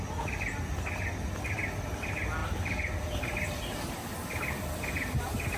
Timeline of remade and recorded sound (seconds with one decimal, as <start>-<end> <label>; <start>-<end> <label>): 0.0-2.4 recorded; 2.4-4.8 remade; 4.8-5.6 recorded